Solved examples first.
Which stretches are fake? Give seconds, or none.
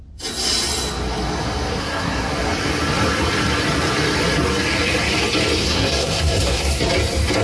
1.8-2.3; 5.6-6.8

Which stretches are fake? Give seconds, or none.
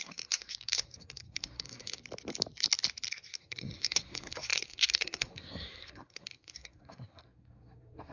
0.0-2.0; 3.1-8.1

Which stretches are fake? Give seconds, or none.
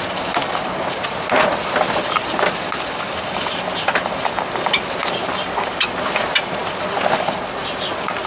none